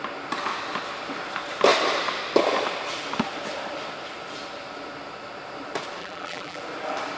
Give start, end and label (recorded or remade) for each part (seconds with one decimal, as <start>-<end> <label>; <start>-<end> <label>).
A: 0.0-6.0 recorded; 6.0-6.6 remade; 6.6-7.2 recorded